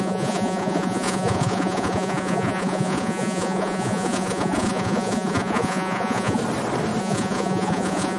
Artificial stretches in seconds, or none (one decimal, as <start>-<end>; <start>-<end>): 0.0-6.4; 7.0-8.2